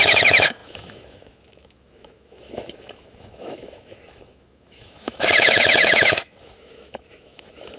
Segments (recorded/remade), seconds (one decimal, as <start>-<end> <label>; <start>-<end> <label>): 0.0-7.8 remade